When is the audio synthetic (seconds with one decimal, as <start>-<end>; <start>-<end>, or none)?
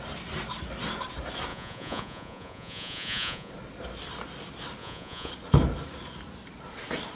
1.5-3.5; 4.8-5.3